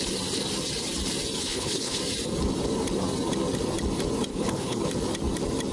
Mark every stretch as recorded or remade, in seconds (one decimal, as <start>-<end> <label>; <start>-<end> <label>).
0.0-1.4 recorded; 1.4-2.0 remade; 2.0-4.3 recorded; 4.3-4.8 remade; 4.8-5.7 recorded